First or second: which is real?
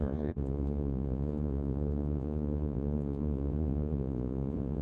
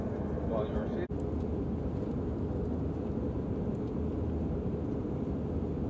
second